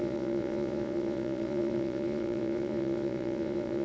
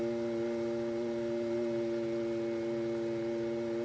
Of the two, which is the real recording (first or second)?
second